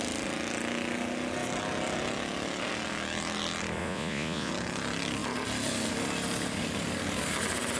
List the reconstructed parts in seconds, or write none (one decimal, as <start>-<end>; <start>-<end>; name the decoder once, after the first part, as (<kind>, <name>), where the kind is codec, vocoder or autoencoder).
3.8-4.5 (vocoder, Vocos)